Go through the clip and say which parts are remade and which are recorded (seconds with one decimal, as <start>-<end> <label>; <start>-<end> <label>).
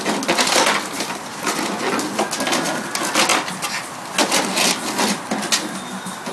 0.0-6.3 recorded